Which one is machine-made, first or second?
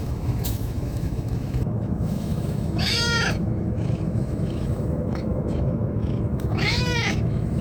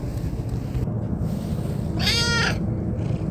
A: first